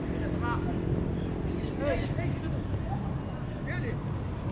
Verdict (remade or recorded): recorded